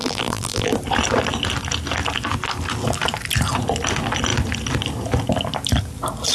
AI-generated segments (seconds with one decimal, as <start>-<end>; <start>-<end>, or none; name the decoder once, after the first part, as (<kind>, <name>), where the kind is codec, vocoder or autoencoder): 0.0-0.7 (vocoder, BigVGAN v2)